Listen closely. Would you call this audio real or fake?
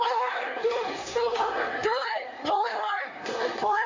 fake